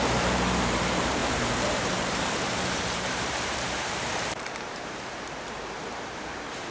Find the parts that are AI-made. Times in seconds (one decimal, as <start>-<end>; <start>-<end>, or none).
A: 0.0-6.7